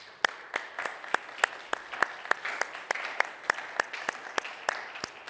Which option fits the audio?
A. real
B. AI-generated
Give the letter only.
A